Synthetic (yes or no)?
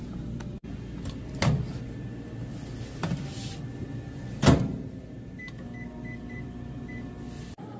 no